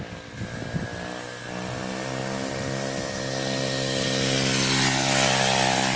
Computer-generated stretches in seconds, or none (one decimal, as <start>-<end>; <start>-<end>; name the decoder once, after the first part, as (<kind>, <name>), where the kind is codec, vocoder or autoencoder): none